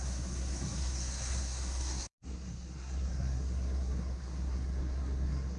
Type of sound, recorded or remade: remade